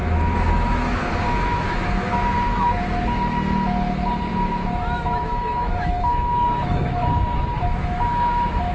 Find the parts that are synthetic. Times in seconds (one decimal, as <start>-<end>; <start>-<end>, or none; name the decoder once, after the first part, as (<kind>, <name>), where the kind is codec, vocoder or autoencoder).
0.0-2.8 (autoencoder, DAC-VAE); 4.3-8.7